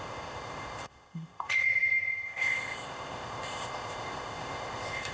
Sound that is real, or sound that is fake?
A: fake